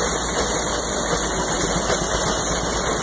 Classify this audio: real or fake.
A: real